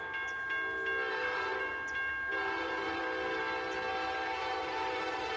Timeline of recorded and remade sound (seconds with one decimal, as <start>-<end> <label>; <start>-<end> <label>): 0.0-1.1 recorded; 1.1-1.7 remade; 1.7-2.3 recorded; 2.3-3.0 remade; 3.0-4.2 recorded; 4.2-4.7 remade; 4.7-5.4 recorded